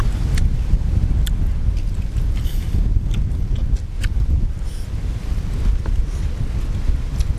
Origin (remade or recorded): recorded